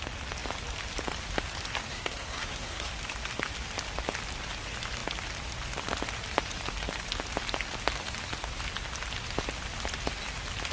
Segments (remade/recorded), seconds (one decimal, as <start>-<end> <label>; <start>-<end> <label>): 0.0-1.9 recorded; 1.9-2.9 remade; 2.9-10.7 recorded